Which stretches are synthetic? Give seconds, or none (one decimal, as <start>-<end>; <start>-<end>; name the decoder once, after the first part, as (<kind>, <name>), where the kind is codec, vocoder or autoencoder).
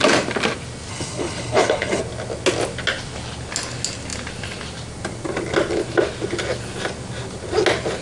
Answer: 0.9-2.0 (codec, HILCodec)